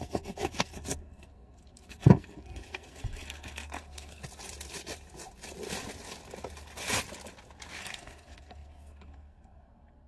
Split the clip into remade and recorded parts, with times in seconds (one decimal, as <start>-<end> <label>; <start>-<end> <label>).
0.0-4.2 remade; 4.2-7.8 recorded; 7.8-10.1 remade